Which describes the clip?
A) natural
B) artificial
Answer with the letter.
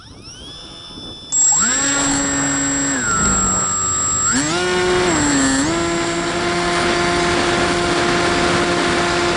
A